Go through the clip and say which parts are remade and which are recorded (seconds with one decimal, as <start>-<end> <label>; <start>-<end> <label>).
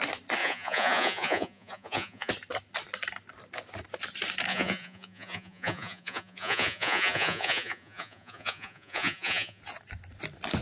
0.0-0.4 recorded; 0.4-2.3 remade; 2.3-4.5 recorded; 4.5-9.6 remade; 9.6-10.6 recorded